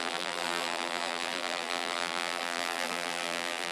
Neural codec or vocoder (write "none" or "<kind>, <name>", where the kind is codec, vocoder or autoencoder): vocoder, BigVGAN v2